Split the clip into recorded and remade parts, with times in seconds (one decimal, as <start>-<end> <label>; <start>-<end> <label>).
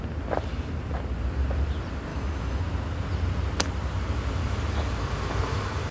0.0-2.1 recorded; 2.1-2.6 remade; 2.6-5.9 recorded